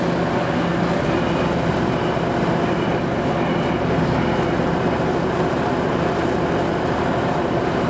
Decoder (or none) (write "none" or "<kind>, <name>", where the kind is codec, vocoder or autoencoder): none